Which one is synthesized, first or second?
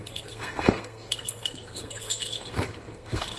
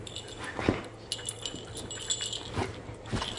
first